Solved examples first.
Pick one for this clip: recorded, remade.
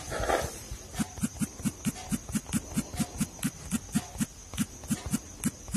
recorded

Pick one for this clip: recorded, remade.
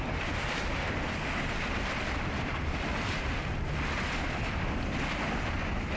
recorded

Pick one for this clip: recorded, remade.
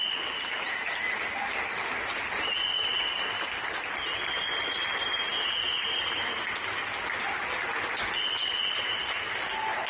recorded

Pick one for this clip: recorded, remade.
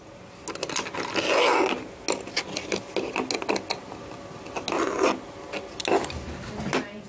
recorded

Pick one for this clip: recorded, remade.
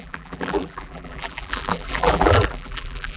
remade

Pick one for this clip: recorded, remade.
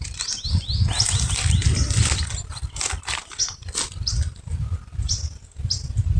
recorded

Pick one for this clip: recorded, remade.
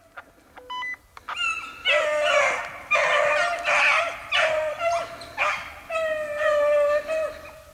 recorded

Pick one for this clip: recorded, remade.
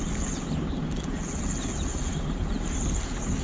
recorded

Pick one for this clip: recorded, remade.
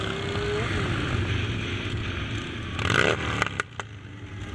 recorded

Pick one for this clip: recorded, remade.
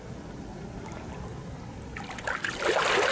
recorded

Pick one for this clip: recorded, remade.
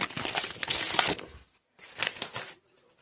recorded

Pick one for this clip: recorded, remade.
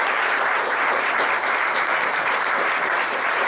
remade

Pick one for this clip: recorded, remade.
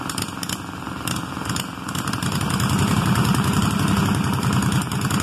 recorded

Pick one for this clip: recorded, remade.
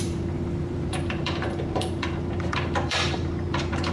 remade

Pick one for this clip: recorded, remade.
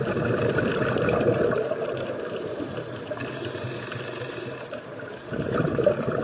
remade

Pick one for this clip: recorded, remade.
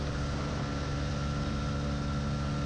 recorded